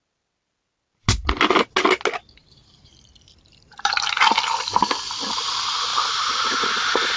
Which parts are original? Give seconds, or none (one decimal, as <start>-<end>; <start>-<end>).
0.0-2.4; 3.9-5.9